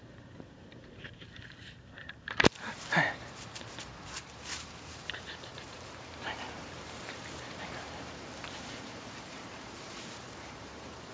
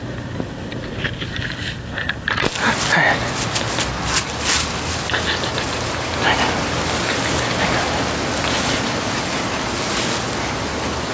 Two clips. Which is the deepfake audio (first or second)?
first